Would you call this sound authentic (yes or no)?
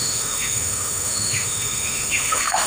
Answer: no